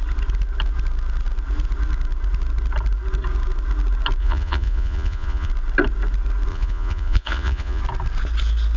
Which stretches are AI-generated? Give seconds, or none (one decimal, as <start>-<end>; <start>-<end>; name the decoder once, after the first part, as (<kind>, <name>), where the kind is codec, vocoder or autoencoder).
4.2-5.5 (vocoder, Vocos); 6.5-7.8